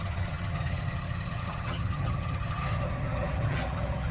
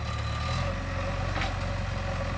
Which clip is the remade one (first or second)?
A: first